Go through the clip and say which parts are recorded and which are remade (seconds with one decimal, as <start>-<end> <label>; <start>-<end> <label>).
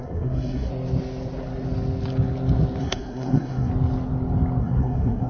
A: 0.0-0.7 remade; 0.7-2.8 recorded; 2.8-3.7 remade; 3.7-4.6 recorded; 4.6-5.3 remade